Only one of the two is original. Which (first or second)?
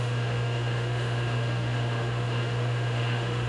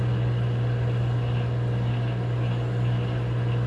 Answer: second